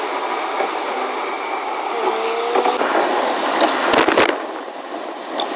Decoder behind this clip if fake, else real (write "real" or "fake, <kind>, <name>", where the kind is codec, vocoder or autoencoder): real